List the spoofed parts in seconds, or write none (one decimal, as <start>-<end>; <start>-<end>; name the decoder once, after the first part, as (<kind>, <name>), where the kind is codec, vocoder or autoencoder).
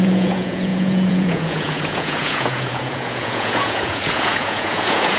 0.0-5.2 (vocoder, Vocos)